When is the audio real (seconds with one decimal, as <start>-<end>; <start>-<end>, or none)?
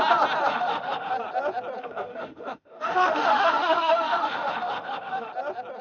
0.0-0.5; 1.1-1.8; 5.3-5.8